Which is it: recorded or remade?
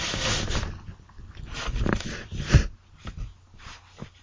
recorded